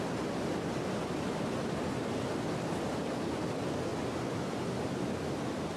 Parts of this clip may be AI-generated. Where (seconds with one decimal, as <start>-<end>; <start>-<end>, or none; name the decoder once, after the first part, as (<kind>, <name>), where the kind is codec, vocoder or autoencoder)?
none